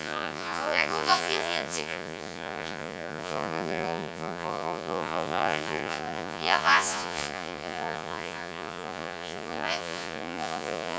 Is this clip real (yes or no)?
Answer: no